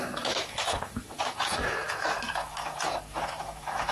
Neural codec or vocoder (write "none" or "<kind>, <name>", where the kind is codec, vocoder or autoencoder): autoencoder, DAC-VAE